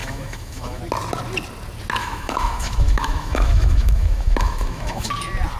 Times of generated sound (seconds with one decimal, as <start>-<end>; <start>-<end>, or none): 0.0-0.8; 2.0-5.1